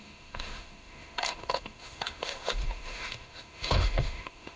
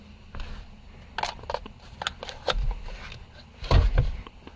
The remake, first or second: first